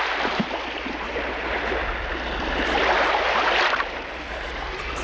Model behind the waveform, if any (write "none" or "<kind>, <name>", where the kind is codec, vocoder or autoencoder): none